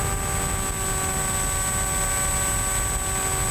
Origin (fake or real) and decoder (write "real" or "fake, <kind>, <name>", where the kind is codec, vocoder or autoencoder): real